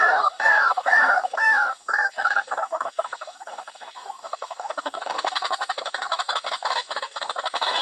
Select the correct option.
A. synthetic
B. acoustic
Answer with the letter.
A